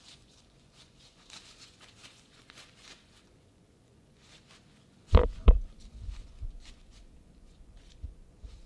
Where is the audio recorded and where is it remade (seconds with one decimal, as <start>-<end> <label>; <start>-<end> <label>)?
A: 0.0-8.7 remade